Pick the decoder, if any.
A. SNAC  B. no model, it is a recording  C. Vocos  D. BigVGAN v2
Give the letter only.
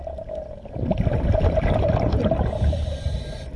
D